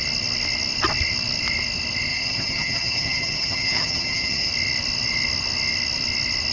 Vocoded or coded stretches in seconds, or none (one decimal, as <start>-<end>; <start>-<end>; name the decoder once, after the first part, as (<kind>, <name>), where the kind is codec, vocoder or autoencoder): 2.1-4.5 (vocoder, HiFi-GAN)